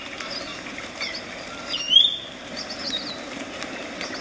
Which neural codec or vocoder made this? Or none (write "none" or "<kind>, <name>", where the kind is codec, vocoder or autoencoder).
vocoder, BigVGAN v2